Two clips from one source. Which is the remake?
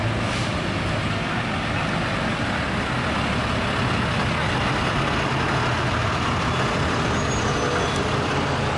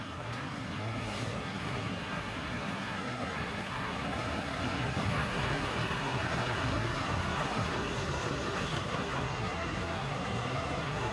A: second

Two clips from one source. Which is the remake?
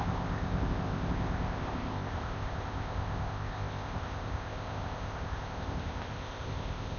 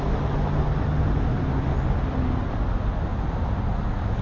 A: first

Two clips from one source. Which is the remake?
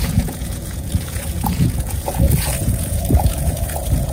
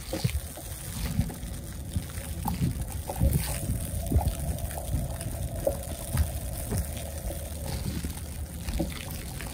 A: first